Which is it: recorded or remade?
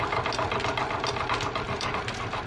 recorded